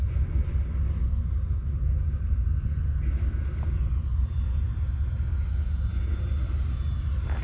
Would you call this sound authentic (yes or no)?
yes